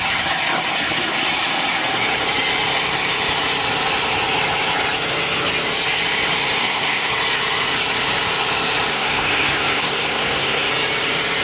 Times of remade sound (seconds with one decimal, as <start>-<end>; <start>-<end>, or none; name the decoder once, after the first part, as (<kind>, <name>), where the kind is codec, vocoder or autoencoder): 6.6-7.1 (codec, SNAC); 8.9-10.7